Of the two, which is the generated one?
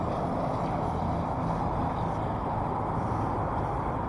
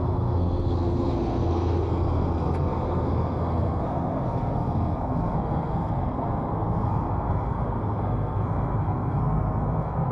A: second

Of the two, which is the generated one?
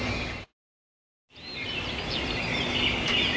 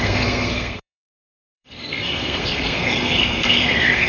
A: second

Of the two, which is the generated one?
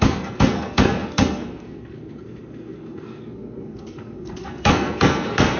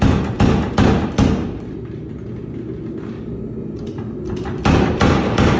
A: first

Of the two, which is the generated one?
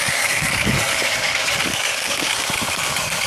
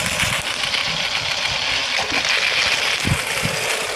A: first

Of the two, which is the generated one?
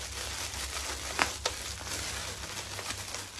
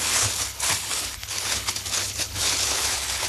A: second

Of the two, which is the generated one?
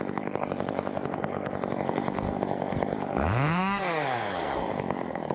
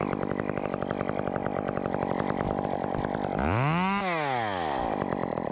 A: first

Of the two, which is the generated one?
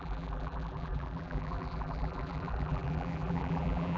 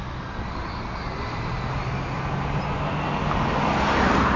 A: first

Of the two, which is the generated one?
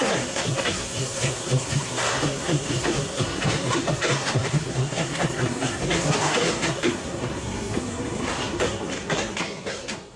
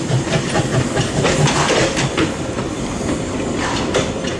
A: first